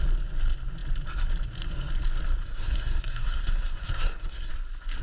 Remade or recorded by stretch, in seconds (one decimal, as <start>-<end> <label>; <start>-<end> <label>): 0.0-2.4 recorded; 2.4-4.5 remade; 4.5-5.0 recorded